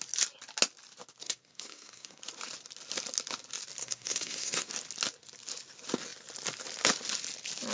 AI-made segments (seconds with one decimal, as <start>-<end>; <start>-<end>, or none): 1.2-2.2; 3.8-4.7